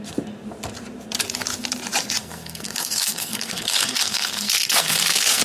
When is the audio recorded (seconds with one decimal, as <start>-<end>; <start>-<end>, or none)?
0.0-2.2